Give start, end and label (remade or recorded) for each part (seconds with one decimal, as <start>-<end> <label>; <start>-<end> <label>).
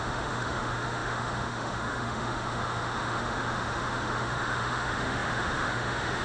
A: 0.0-6.2 remade